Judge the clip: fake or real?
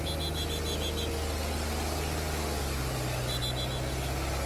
real